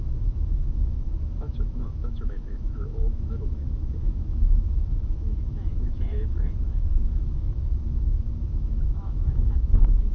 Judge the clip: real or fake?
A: fake